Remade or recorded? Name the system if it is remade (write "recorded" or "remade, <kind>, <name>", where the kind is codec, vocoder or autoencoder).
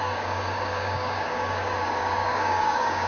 remade, codec, DAC